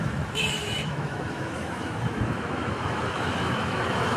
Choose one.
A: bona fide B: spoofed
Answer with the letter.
B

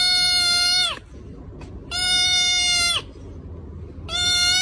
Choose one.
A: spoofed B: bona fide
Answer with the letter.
B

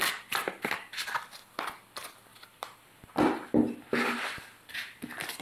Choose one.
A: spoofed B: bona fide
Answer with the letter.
B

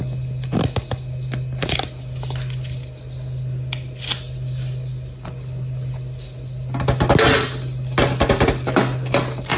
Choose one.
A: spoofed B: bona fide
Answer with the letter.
B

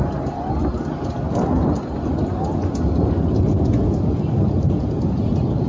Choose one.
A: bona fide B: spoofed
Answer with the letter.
A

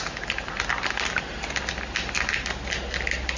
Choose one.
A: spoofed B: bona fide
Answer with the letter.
B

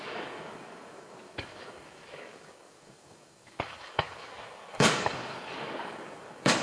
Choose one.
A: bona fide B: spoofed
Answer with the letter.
B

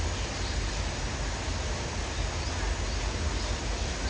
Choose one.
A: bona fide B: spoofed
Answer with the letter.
A